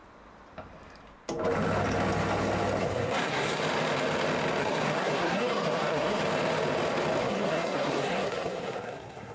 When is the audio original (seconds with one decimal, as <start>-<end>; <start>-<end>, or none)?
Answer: 0.0-2.8; 3.6-4.6; 6.2-7.2